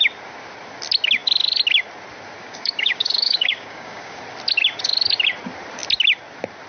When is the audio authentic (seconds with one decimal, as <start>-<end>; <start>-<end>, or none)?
0.0-2.4; 4.2-6.7